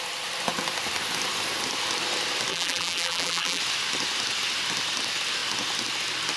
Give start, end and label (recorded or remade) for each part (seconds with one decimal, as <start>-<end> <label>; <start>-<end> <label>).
0.0-2.5 recorded; 2.5-3.6 remade; 3.6-6.4 recorded